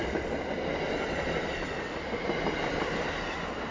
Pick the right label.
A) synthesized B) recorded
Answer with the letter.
B